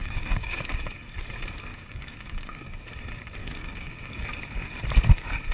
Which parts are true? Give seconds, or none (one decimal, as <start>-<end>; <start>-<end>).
0.8-1.7; 2.9-3.4; 4.2-5.5